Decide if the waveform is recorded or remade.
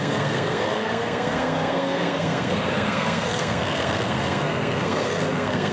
remade